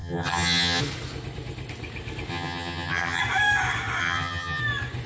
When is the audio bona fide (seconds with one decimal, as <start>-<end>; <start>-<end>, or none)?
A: 0.8-2.3; 3.2-4.0; 4.6-5.1